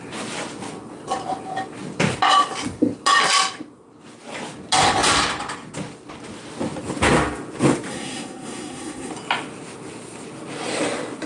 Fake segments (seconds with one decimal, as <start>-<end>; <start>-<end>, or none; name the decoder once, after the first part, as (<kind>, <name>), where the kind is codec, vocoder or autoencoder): 7.9-9.1 (codec, SNAC)

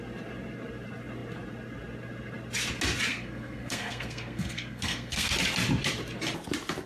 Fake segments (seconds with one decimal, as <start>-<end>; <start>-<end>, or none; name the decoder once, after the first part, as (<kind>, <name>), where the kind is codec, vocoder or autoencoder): 3.1-5.3 (codec, SNAC)

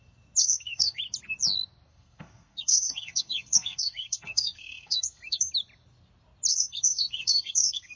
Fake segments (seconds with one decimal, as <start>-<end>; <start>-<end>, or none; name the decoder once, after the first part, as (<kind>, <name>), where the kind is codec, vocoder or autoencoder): 0.4-1.0 (codec, SNAC); 1.9-5.5; 6.5-8.0

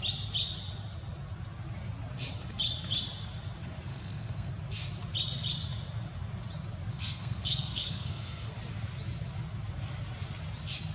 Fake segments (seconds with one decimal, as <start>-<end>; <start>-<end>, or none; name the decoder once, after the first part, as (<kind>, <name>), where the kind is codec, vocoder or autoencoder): 3.9-4.5 (codec, SNAC); 6.9-8.5

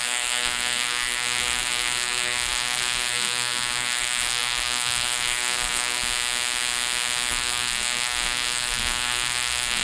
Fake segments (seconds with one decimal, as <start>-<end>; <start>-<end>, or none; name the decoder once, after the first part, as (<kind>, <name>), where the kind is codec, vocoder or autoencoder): 0.0-6.0 (codec, SNAC); 7.3-9.8

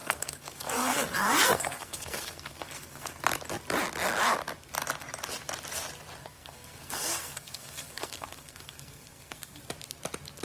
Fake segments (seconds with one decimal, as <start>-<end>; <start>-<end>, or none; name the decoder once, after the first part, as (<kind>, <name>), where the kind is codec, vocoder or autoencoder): 0.0-3.2 (codec, SNAC); 6.2-9.6